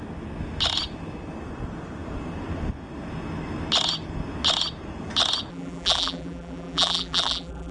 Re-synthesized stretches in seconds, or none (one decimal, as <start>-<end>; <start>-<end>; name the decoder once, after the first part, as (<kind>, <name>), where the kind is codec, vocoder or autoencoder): 5.5-7.7 (vocoder, BigVGAN v2)